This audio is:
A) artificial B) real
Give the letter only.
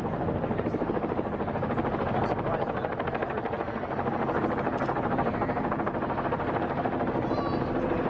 B